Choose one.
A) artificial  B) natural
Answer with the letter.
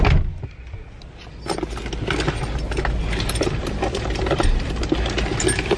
B